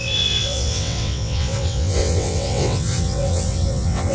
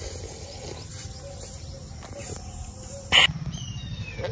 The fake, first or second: first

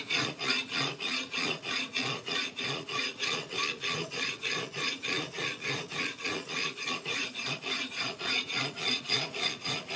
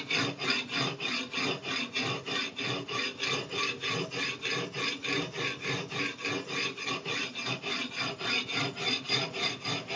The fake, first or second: first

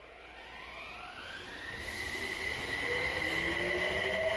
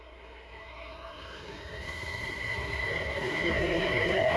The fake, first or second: second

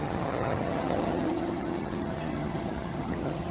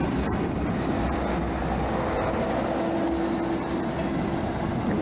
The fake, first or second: first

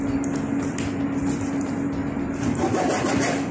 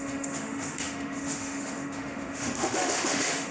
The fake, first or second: second